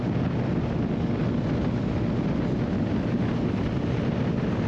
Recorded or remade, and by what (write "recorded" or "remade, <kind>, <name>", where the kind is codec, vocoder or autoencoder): recorded